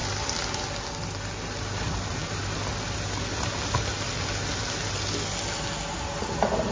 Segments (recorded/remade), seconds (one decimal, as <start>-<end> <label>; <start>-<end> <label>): 0.0-6.7 recorded